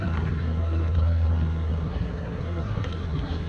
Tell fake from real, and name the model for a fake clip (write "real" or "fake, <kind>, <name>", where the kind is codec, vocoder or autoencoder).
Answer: fake, codec, SNAC